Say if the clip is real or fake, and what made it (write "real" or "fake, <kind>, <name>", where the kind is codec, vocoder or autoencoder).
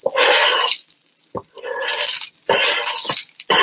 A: real